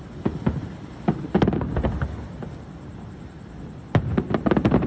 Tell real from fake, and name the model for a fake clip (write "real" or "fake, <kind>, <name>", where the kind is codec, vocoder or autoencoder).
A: real